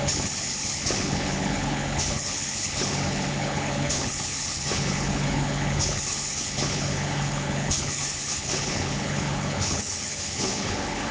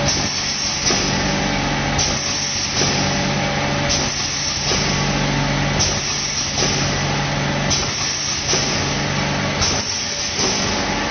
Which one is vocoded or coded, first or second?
first